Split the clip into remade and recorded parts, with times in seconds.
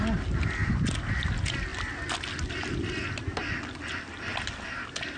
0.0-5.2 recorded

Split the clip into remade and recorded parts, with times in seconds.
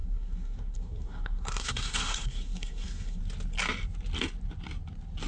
0.0-3.2 remade; 3.2-5.3 recorded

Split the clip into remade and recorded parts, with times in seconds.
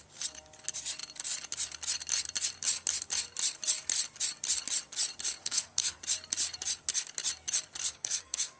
0.0-5.4 recorded; 5.4-6.0 remade; 6.0-7.8 recorded; 7.8-8.6 remade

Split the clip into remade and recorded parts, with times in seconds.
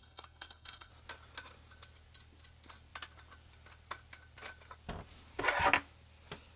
0.0-0.9 remade; 0.9-6.6 recorded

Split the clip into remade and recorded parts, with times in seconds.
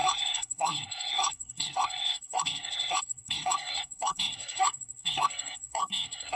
0.0-6.4 remade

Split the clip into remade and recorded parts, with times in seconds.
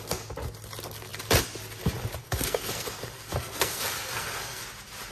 0.0-2.2 recorded; 2.2-4.6 remade; 4.6-5.1 recorded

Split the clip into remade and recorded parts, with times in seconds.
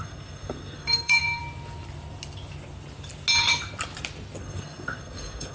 0.0-1.4 remade; 1.4-4.4 recorded; 4.4-5.5 remade